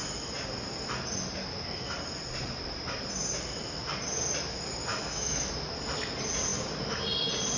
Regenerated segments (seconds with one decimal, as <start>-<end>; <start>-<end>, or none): 4.9-5.5